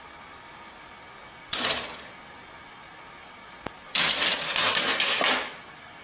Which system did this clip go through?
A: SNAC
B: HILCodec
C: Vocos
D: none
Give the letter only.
D